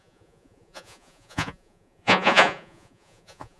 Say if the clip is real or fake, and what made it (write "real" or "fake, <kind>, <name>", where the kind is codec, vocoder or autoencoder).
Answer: fake, vocoder, Vocos